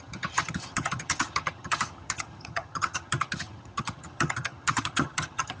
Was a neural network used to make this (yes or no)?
yes